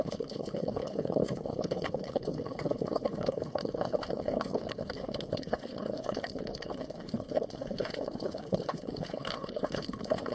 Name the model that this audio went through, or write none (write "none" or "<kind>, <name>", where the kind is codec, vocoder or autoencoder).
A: codec, HILCodec